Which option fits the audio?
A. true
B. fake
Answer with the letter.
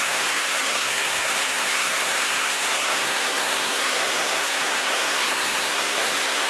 B